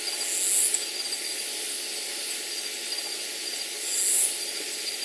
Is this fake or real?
real